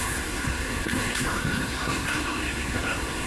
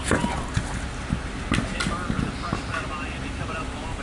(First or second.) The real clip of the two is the second